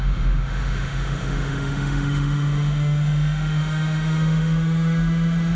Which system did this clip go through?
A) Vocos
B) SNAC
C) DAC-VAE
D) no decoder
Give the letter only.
C